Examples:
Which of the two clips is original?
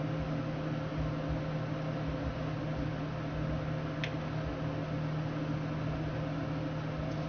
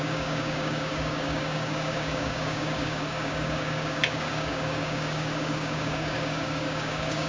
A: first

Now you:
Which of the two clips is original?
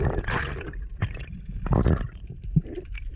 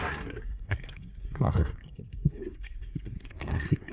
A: first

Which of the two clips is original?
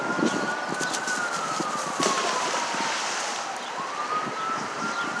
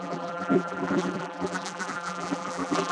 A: first